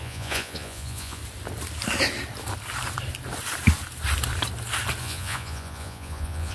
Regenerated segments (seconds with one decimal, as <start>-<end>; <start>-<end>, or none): 0.0-1.2; 5.0-6.5